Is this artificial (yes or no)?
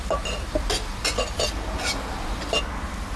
no